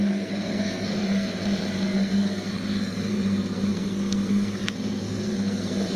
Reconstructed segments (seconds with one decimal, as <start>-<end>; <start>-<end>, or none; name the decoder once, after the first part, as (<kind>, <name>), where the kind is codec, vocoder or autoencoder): 0.0-6.0 (codec, SNAC)